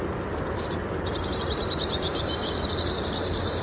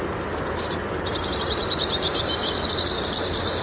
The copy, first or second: first